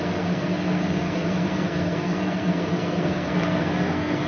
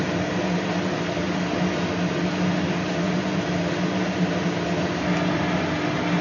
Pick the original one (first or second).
second